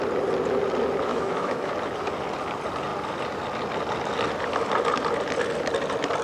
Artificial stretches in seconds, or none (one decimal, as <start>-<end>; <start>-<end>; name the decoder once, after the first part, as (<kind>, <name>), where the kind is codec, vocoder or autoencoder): 1.1-1.7 (autoencoder, DAC-VAE)